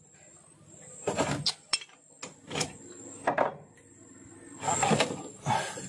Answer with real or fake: real